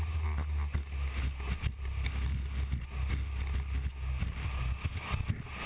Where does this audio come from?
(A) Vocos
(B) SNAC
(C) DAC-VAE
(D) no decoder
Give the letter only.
D